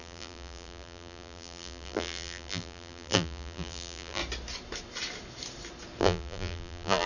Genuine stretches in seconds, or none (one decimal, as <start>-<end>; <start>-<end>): 4.2-6.0